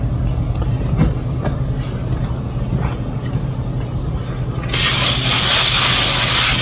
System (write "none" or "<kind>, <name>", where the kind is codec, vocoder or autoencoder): none